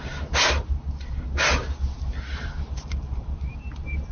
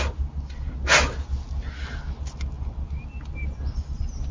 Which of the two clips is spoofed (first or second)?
first